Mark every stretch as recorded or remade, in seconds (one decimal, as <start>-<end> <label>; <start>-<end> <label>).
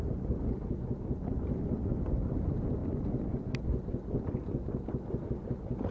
0.0-5.9 recorded